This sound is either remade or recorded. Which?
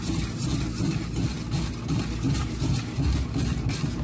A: recorded